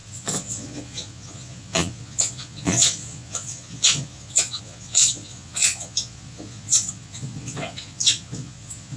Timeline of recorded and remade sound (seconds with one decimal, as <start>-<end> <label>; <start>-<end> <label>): 0.0-9.0 remade